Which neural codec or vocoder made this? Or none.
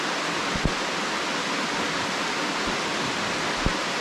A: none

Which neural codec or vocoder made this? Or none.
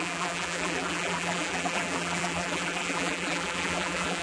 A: vocoder, BigVGAN v2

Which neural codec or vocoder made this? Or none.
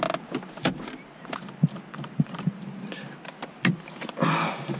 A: none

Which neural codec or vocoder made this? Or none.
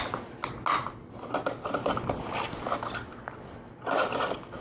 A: none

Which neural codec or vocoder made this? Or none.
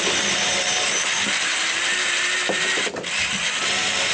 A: none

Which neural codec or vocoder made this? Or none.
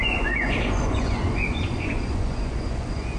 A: vocoder, Vocos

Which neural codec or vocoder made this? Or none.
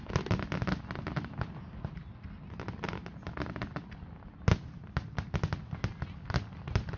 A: none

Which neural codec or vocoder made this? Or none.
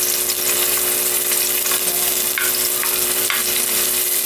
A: none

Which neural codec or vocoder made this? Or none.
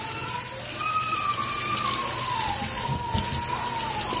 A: none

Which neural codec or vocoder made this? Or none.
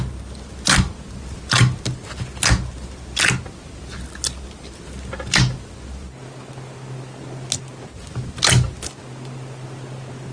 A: none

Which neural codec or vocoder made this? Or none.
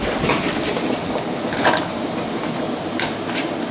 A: none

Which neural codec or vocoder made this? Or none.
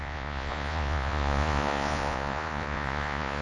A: vocoder, Vocos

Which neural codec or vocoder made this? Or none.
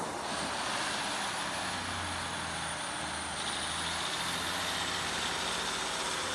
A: none